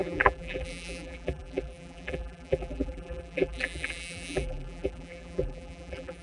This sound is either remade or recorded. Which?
remade